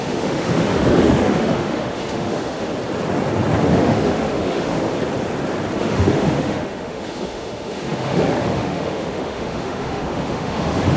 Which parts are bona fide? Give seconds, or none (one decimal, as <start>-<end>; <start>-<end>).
2.7-3.7; 4.9-5.8